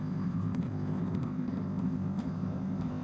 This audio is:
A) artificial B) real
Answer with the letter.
A